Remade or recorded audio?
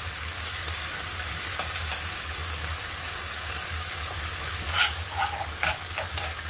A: remade